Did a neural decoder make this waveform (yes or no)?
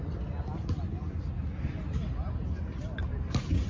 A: no